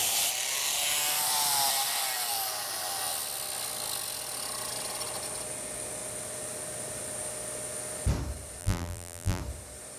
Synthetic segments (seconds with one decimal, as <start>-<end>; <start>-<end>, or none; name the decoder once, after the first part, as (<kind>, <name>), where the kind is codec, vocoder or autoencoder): 8.6-9.4 (vocoder, BigVGAN v2)